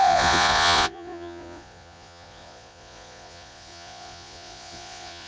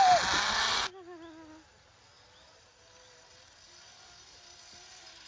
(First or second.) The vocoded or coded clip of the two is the first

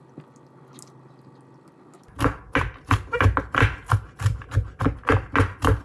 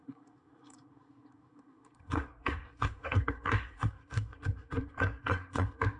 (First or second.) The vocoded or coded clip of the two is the second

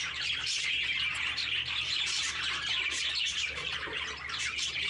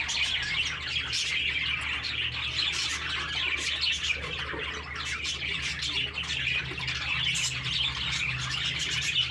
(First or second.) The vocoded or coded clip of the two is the first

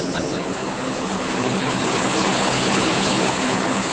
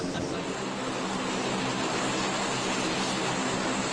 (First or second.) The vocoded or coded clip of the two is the first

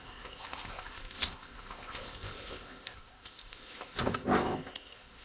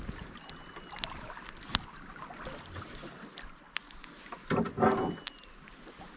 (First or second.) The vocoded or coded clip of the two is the first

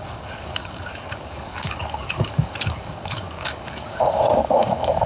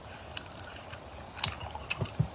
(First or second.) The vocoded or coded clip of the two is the first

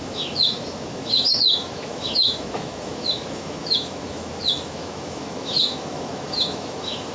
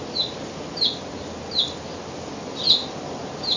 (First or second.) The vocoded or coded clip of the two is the first